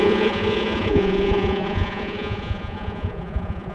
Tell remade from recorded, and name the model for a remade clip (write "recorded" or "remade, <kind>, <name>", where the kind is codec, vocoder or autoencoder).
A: remade, vocoder, Vocos